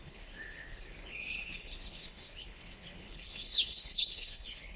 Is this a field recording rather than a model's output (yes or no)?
no